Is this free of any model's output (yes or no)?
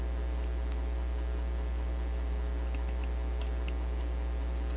yes